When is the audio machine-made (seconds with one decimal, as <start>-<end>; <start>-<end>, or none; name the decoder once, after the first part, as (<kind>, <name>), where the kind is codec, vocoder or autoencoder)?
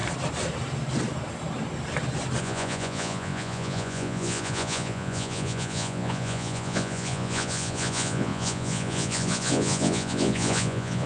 2.4-11.1 (vocoder, Vocos)